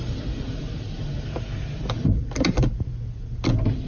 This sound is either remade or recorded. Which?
recorded